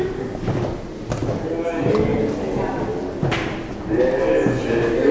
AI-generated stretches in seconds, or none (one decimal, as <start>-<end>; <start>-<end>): none